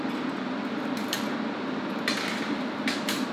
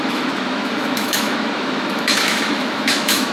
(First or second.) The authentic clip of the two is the first